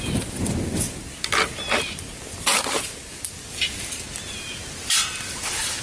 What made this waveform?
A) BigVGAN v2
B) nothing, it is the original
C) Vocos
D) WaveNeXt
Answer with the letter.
B